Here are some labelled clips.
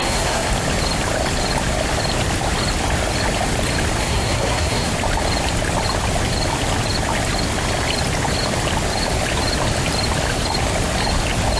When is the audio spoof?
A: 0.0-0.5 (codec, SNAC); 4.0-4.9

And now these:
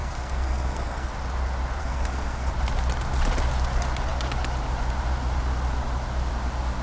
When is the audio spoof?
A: 0.0-1.1 (codec, SNAC); 1.8-2.5

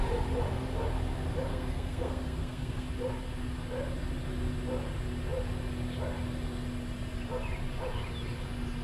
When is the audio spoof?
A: 1.5-2.9 (codec, SNAC)